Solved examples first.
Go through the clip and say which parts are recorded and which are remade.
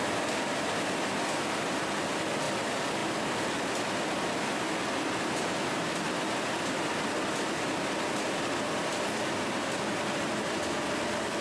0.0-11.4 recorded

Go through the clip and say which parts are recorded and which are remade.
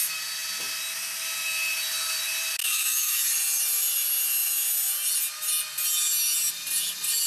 0.0-2.6 recorded; 2.6-3.2 remade; 3.2-7.3 recorded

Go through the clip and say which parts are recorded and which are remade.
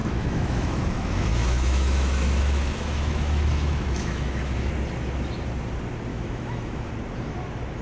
0.0-4.7 remade; 4.7-6.1 recorded; 6.1-6.9 remade; 6.9-7.8 recorded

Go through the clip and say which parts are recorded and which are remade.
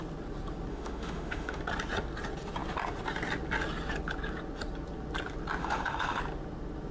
0.0-0.7 recorded; 0.7-1.6 remade; 1.6-5.6 recorded; 5.6-6.2 remade; 6.2-6.9 recorded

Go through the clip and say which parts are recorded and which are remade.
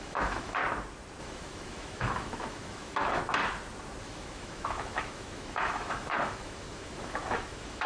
0.0-0.6 remade; 0.6-1.2 recorded; 1.2-3.2 remade; 3.2-4.0 recorded; 4.0-7.9 remade